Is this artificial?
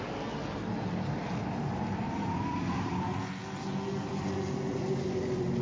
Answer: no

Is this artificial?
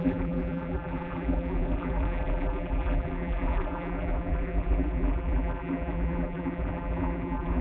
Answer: yes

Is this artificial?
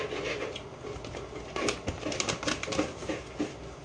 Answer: no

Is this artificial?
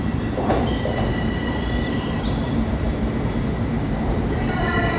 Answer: yes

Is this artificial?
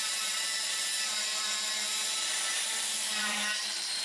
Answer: yes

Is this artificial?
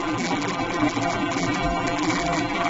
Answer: yes